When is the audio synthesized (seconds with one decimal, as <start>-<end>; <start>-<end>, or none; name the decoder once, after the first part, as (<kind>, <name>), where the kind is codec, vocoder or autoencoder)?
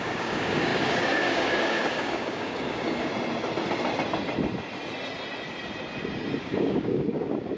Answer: 0.0-3.1 (codec, DAC); 6.4-7.6